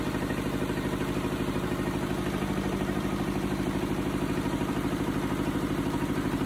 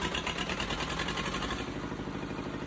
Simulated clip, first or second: first